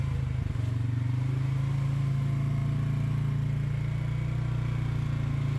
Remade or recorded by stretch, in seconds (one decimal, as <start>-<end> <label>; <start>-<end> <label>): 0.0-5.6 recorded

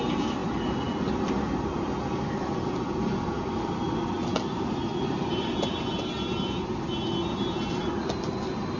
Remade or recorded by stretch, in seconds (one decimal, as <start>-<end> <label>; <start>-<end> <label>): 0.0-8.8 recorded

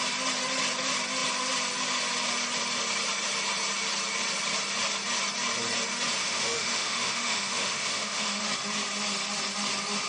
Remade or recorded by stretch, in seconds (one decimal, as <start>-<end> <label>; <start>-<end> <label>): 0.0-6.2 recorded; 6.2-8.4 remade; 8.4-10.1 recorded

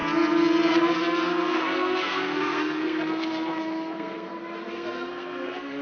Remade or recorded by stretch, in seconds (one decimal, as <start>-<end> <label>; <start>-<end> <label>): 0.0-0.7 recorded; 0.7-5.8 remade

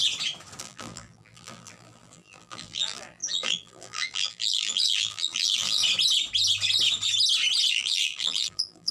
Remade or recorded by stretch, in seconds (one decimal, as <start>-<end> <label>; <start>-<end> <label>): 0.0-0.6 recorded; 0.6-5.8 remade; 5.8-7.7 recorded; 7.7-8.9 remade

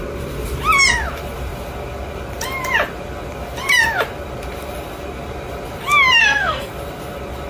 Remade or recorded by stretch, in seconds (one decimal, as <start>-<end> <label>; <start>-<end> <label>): 0.0-6.2 recorded; 6.2-6.7 remade; 6.7-7.5 recorded

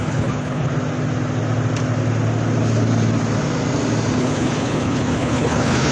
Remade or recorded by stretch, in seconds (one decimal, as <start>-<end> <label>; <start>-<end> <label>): 0.0-0.7 remade; 0.7-4.2 recorded; 4.2-5.9 remade